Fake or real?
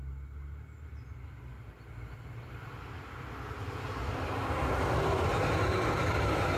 real